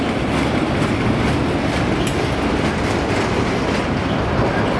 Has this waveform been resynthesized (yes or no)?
no